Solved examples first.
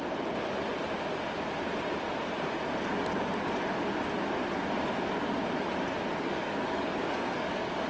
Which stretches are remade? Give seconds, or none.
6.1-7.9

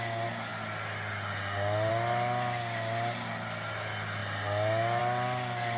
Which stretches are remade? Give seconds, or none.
none

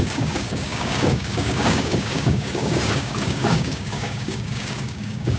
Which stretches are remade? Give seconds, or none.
0.0-5.4

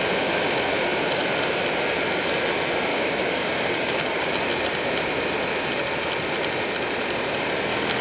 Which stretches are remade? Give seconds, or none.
2.9-4.3

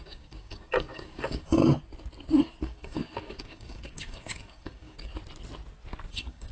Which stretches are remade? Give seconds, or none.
0.0-1.6; 2.6-5.1; 6.1-6.5

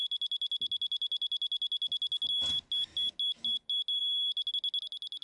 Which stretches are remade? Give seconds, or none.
none

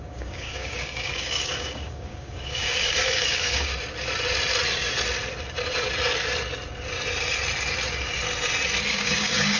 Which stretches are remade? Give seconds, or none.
0.0-3.7; 8.9-9.6

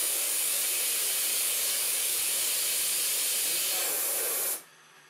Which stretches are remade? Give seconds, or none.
0.0-0.6; 1.3-2.5